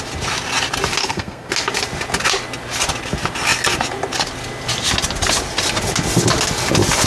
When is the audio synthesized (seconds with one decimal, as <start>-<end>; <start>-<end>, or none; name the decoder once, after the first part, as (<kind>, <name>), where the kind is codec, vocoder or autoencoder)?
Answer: 1.0-1.5 (codec, SNAC)